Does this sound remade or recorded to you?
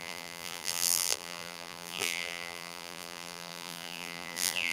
remade